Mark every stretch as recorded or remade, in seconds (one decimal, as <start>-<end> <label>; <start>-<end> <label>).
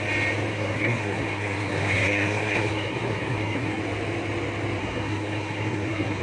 0.0-0.5 recorded; 0.5-3.8 remade; 3.8-4.8 recorded; 4.8-6.2 remade